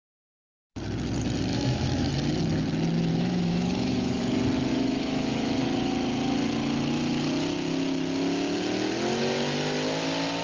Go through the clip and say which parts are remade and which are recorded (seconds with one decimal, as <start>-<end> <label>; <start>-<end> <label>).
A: 0.0-1.5 recorded; 1.5-2.1 remade; 2.1-3.1 recorded; 3.1-4.2 remade; 4.2-4.7 recorded; 4.7-5.6 remade; 5.6-10.4 recorded